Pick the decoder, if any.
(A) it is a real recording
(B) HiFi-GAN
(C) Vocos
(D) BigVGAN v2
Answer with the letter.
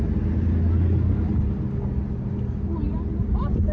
A